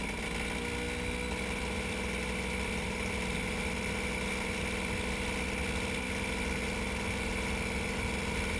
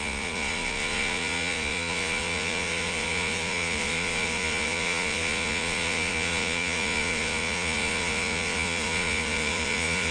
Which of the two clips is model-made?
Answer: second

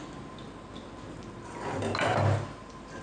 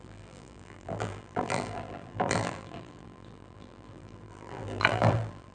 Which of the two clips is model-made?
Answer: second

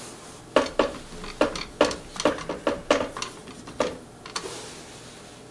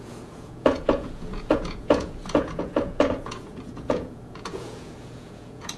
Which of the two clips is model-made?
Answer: second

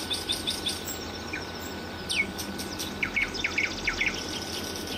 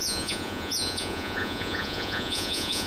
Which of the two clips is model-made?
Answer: second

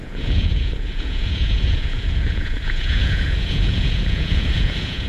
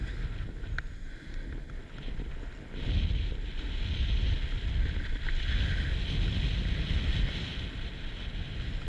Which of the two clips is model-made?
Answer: first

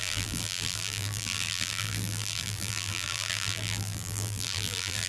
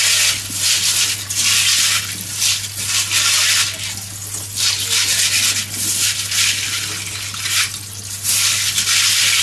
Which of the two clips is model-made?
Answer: first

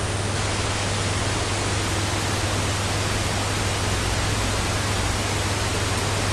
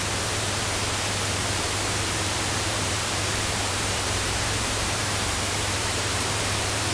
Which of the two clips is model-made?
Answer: second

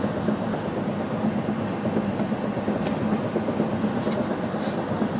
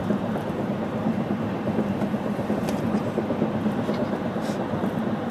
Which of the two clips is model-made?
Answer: second